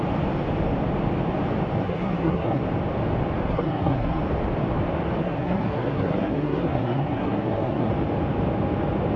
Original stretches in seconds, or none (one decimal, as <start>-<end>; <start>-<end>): 0.0-1.8; 2.6-3.4; 4.2-5.2; 7.9-9.2

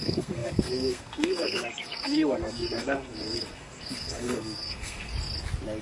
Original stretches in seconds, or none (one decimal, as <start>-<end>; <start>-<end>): 5.1-5.8

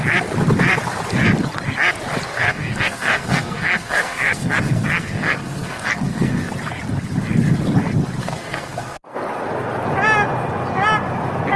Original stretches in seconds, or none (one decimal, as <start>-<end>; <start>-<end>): 0.0-2.3; 6.5-8.2; 9.2-11.6

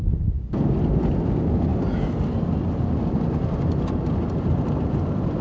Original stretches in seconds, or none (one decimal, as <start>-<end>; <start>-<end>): 0.0-5.4